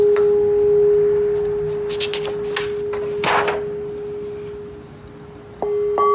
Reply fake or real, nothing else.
real